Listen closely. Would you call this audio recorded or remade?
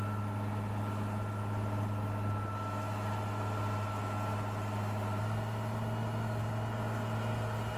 recorded